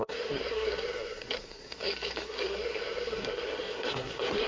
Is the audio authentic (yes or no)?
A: no